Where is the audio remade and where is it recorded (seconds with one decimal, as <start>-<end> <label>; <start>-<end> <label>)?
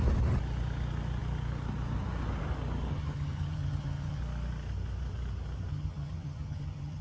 0.0-2.9 recorded; 2.9-4.2 remade; 4.2-5.7 recorded; 5.7-7.0 remade